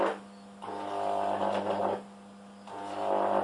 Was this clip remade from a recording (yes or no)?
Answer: no